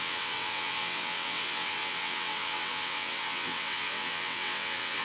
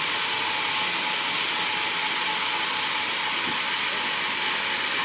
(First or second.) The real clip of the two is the second